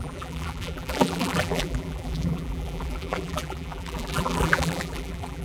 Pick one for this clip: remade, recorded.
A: remade